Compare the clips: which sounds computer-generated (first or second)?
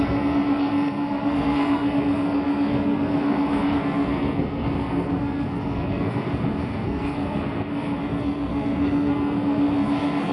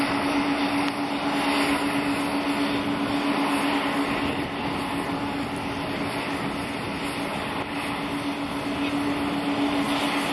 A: first